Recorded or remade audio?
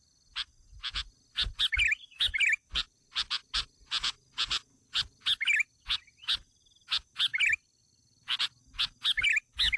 recorded